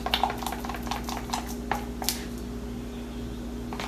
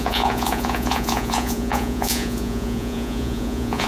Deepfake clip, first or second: second